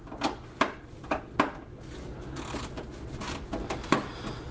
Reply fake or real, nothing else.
real